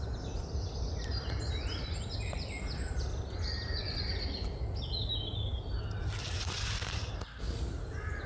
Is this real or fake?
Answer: real